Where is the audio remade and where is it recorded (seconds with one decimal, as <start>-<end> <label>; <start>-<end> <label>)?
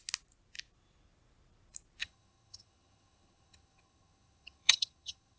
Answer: 0.0-2.0 recorded; 2.0-5.4 remade